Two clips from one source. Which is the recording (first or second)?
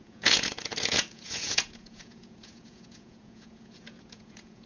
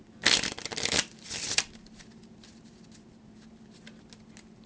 second